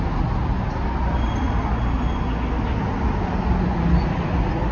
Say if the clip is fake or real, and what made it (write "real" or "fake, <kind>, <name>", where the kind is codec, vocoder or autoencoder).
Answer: real